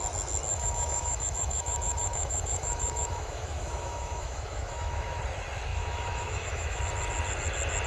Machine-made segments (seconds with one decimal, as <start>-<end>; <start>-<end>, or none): 0.5-5.2; 5.7-6.8